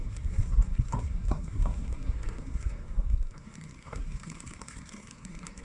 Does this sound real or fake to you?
fake